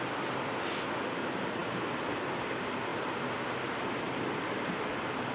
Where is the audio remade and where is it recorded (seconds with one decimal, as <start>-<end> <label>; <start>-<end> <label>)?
0.0-5.3 recorded